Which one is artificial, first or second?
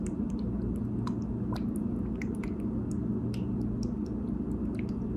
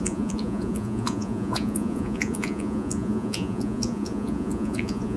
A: second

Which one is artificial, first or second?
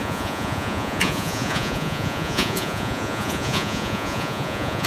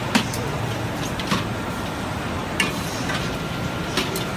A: first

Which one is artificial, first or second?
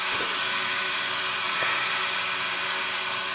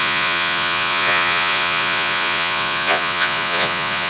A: second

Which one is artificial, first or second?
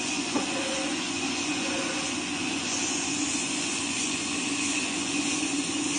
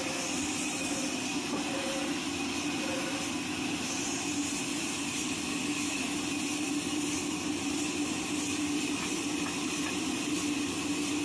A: first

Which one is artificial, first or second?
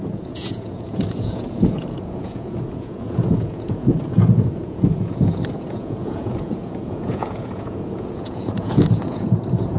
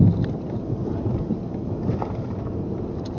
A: first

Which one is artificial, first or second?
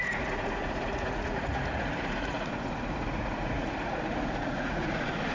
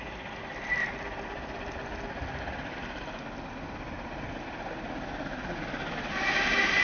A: first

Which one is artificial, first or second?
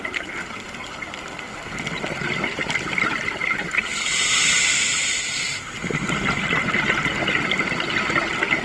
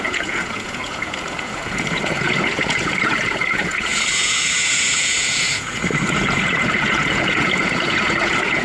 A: second